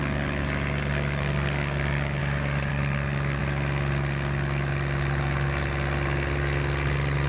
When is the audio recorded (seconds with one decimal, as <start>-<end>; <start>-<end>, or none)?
0.4-0.9; 2.2-2.7; 3.4-7.3